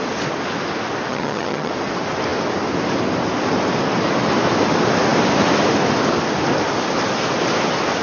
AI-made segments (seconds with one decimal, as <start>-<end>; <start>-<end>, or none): 1.1-1.7